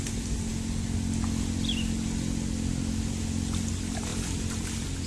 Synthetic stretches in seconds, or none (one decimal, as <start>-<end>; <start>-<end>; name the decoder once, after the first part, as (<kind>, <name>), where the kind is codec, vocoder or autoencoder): none